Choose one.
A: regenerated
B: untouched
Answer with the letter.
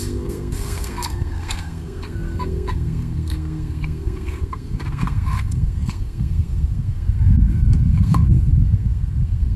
A